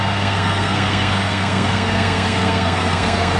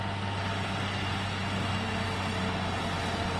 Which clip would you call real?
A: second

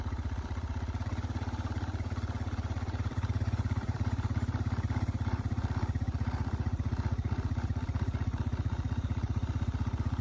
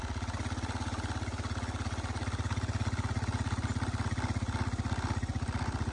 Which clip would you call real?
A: second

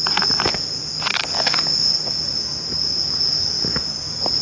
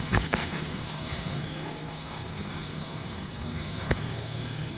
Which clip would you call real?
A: first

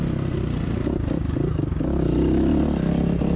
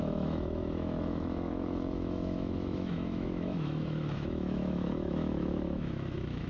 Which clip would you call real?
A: first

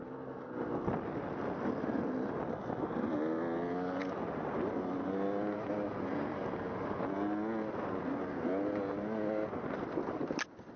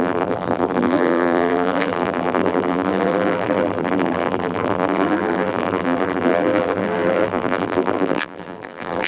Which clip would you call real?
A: first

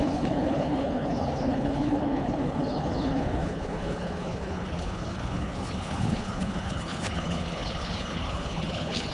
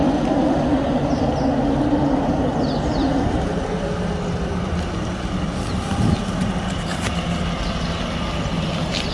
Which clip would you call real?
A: second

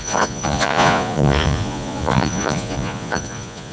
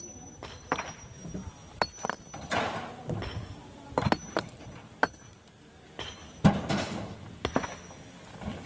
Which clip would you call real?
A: second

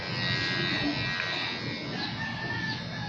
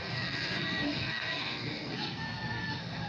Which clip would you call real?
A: first